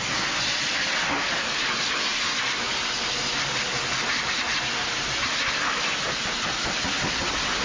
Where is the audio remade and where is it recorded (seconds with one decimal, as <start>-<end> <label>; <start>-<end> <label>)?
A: 0.0-7.6 recorded